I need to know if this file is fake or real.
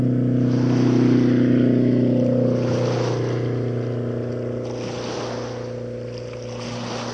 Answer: real